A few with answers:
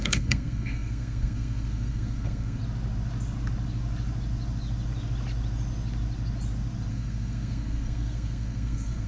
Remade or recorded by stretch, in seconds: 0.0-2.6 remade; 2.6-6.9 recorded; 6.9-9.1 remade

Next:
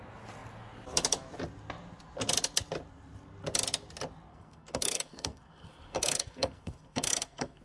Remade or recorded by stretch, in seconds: 0.0-4.3 recorded; 4.3-7.6 remade

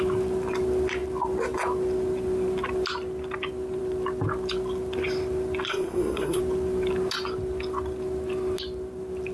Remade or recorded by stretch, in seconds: 0.0-5.7 recorded; 5.7-6.4 remade; 6.4-9.3 recorded

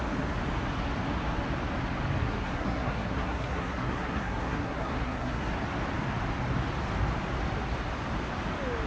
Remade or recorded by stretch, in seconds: 0.0-2.2 recorded; 2.2-5.5 remade; 5.5-8.9 recorded

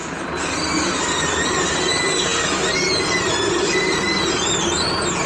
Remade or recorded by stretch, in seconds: 0.0-5.3 recorded

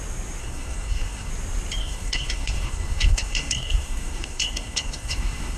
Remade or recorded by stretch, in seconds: 0.0-0.4 recorded; 0.4-1.3 remade; 1.3-1.8 recorded; 1.8-5.6 remade

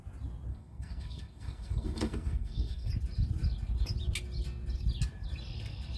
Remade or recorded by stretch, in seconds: 0.0-0.5 recorded; 0.5-2.9 remade; 2.9-6.0 recorded